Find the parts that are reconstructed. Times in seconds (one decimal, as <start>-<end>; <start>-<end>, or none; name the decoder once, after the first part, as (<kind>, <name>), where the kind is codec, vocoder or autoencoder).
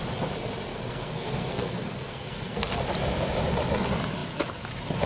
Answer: 0.7-2.8 (codec, SNAC)